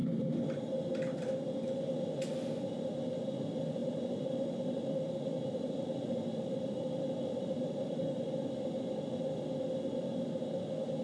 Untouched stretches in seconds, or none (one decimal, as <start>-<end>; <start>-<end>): 0.0-3.8; 8.3-11.0

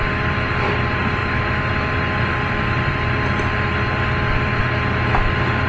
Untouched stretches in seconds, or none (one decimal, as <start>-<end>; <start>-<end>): none

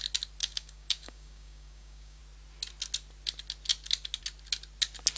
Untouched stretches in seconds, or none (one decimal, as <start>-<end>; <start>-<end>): 0.0-0.4; 2.2-5.2